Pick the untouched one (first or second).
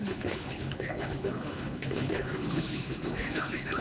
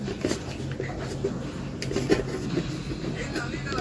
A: second